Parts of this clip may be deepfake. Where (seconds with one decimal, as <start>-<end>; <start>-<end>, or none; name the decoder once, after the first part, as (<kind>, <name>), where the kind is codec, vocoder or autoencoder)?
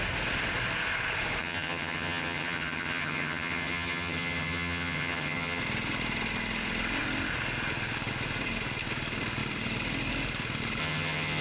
1.4-5.6 (vocoder, HiFi-GAN); 10.8-11.4